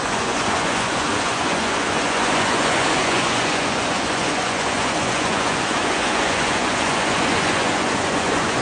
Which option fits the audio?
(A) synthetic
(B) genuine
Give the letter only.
A